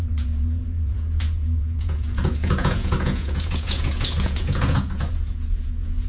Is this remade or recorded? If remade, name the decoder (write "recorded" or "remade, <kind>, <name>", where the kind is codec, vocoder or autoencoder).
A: remade, vocoder, Vocos